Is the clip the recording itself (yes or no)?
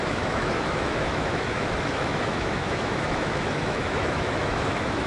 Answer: no